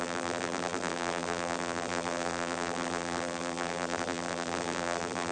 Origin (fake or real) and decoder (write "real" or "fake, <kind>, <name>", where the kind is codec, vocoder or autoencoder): fake, vocoder, BigVGAN v2